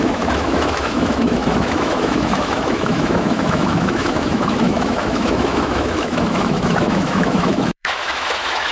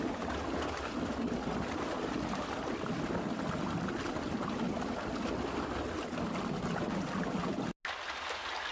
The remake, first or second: first